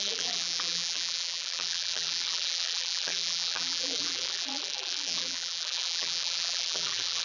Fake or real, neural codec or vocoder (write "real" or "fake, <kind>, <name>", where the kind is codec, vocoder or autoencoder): fake, vocoder, BigVGAN v2